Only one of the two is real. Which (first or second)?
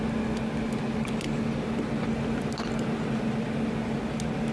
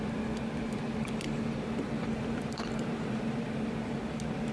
first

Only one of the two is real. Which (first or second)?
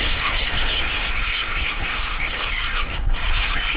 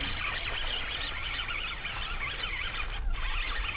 second